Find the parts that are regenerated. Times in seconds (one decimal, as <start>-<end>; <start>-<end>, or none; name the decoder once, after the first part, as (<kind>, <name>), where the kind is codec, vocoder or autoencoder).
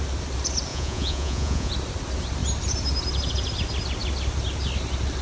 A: 0.7-1.7 (vocoder, Vocos)